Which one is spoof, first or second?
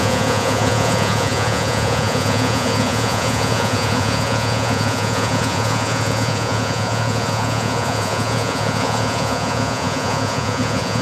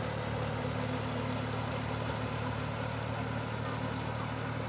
first